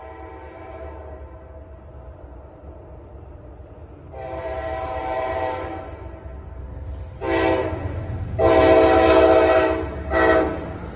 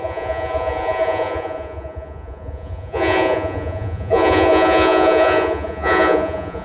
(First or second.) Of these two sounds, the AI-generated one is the second